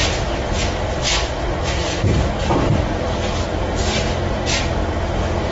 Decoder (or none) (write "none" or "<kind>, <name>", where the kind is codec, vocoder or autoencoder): none